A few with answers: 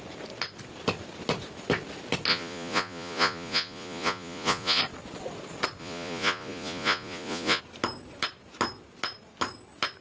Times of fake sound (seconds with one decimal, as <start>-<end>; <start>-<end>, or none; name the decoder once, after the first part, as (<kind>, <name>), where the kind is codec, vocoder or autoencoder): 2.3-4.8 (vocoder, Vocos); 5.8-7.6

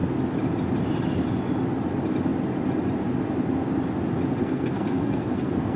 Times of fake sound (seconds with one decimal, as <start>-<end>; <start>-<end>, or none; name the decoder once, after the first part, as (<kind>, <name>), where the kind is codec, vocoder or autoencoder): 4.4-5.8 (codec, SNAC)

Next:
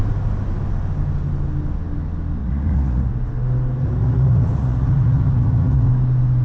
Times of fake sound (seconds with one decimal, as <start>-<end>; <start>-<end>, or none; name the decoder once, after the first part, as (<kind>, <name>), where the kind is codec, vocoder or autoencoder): 2.4-3.1 (vocoder, Vocos); 3.8-5.9

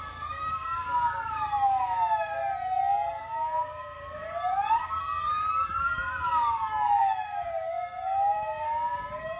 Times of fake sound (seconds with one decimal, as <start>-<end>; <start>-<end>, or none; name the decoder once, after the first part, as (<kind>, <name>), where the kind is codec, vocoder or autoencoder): 0.0-2.4 (codec, DAC); 3.2-9.4

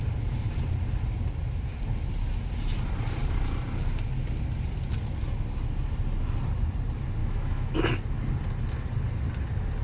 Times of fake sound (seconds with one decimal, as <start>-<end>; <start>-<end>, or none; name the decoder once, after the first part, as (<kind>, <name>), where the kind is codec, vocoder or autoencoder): 7.2-7.8 (autoencoder, DAC-VAE)